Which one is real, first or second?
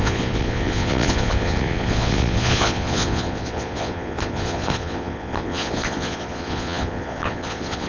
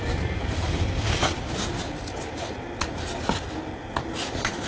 second